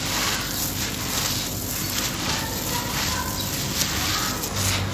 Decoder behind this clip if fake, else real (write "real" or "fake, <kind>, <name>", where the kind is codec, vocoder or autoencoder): real